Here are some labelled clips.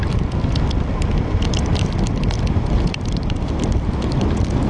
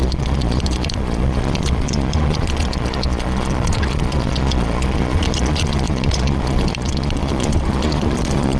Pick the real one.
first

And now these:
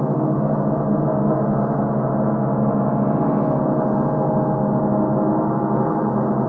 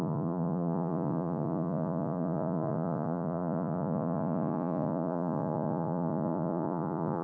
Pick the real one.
first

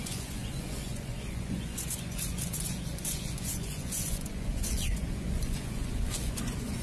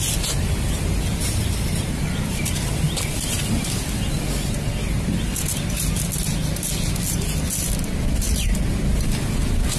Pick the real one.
second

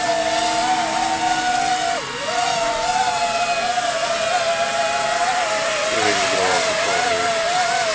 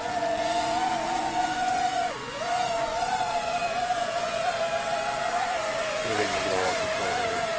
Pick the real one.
first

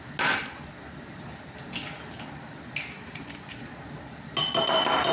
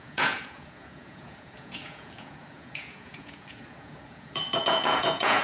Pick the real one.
first